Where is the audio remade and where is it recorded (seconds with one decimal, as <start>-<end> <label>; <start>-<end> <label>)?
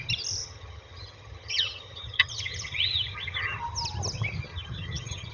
0.0-0.4 recorded; 0.4-3.6 remade; 3.6-4.5 recorded; 4.5-5.3 remade